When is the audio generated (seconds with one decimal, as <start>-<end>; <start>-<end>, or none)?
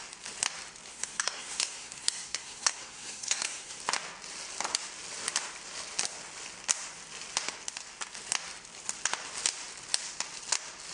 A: 0.9-3.8